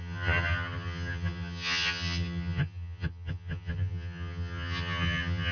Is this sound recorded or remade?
remade